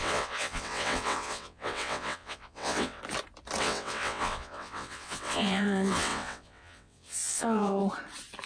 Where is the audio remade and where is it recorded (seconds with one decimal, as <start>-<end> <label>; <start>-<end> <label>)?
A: 0.0-3.0 remade; 3.0-3.6 recorded; 3.6-7.8 remade; 7.8-8.5 recorded